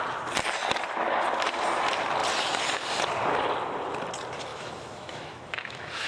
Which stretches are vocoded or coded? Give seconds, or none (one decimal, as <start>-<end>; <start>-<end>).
4.5-6.1